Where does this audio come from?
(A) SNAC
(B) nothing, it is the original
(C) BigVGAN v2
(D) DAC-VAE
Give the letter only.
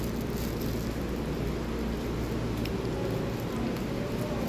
B